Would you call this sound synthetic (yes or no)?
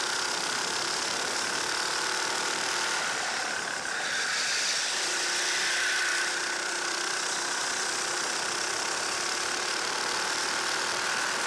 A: no